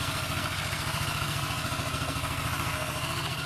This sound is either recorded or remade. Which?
remade